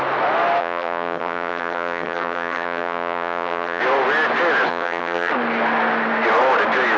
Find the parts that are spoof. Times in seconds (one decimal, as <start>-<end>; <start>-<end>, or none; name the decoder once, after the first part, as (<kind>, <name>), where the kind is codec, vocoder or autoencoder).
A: 0.6-3.8 (vocoder, HiFi-GAN); 4.7-5.3